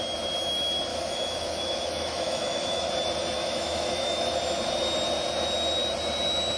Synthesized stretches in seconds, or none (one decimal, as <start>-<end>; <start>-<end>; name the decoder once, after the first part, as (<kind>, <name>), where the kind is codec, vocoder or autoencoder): 0.9-2.9 (autoencoder, DAC-VAE); 3.4-4.3